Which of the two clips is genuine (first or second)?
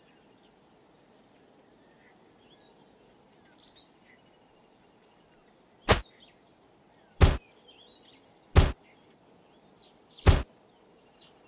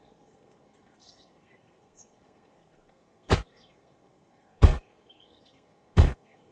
first